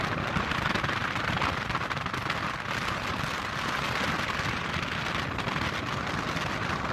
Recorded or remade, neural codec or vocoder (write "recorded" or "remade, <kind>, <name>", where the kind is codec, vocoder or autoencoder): recorded